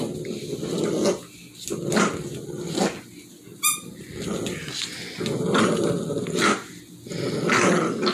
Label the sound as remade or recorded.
recorded